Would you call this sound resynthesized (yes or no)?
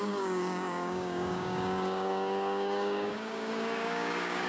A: yes